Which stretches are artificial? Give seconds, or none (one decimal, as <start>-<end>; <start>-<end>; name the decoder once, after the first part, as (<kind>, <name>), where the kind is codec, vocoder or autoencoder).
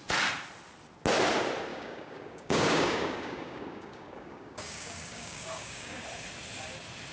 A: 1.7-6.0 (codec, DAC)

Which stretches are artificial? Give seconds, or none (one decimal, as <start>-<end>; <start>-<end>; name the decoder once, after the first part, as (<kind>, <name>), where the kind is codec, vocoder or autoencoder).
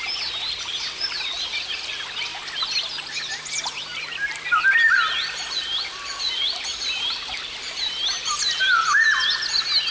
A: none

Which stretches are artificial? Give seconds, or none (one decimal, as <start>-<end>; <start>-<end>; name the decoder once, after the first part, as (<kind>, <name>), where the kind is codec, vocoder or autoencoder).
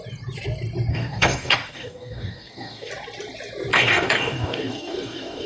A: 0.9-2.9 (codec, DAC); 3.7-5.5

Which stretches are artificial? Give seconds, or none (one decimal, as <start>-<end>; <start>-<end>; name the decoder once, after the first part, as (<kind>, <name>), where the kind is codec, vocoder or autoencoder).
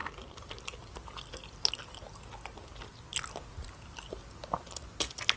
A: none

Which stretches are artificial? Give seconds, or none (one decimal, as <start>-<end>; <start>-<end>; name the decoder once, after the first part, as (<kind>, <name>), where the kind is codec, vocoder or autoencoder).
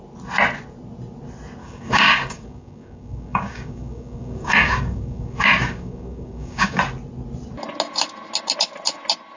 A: 1.6-6.8 (codec, DAC)